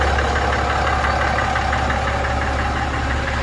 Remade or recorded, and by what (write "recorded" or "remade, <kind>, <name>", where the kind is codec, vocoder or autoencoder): recorded